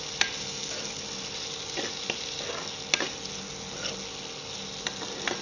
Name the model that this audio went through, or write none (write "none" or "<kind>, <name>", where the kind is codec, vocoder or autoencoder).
none